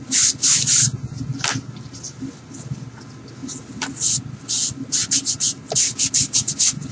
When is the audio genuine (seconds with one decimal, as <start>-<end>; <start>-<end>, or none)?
0.0-6.9